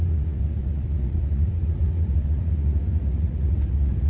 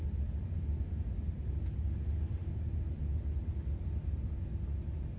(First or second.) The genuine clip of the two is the second